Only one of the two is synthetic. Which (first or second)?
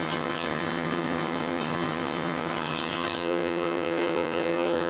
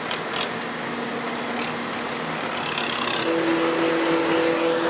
first